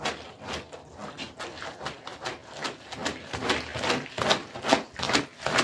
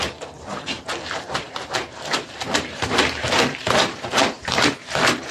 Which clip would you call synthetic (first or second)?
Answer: second